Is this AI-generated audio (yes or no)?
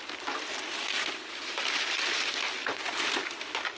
no